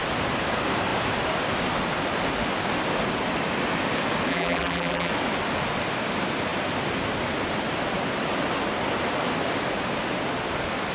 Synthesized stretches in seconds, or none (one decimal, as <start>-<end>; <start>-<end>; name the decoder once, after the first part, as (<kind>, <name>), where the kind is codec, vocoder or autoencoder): 4.3-5.1 (vocoder, BigVGAN v2)